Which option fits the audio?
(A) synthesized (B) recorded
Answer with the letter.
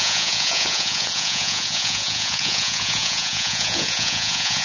A